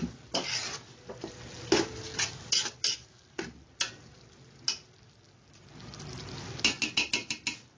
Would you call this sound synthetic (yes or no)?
no